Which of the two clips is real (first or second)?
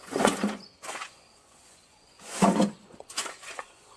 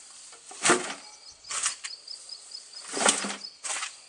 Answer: second